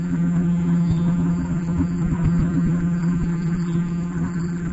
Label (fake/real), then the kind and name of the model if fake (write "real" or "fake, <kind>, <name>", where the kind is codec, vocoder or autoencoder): fake, vocoder, BigVGAN v2